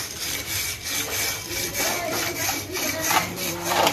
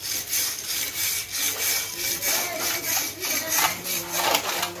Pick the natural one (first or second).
second